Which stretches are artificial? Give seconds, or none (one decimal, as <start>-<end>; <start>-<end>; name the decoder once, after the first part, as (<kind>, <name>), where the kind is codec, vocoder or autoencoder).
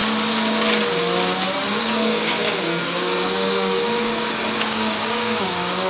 1.8-5.9 (codec, DAC)